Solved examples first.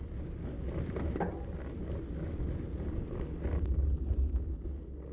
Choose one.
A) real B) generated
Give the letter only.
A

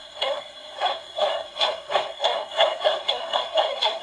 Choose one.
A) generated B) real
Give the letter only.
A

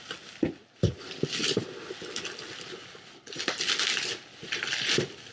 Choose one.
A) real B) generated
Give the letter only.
A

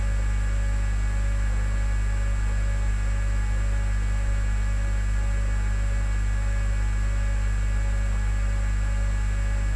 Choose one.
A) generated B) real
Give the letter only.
B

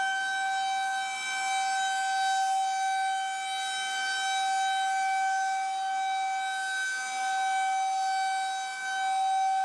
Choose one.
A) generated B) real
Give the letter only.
B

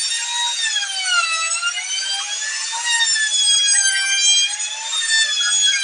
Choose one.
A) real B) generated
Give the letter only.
A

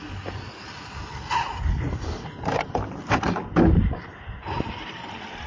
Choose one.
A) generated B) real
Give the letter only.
B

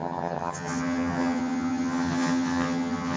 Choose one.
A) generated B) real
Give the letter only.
A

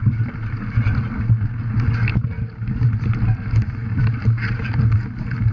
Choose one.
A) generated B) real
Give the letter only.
B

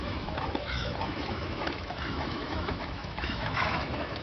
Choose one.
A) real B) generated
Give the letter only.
B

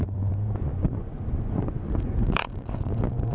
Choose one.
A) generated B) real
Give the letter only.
A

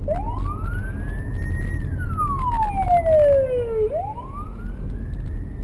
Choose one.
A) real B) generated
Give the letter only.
A